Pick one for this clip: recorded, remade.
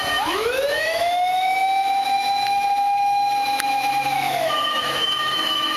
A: remade